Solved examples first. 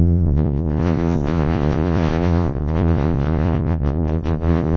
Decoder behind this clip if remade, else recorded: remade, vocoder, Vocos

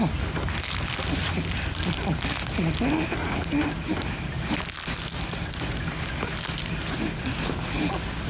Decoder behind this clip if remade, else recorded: recorded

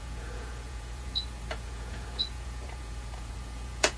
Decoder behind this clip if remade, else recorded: remade, vocoder, Vocos